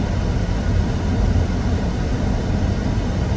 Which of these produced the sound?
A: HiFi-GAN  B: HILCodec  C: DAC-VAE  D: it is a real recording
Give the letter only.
D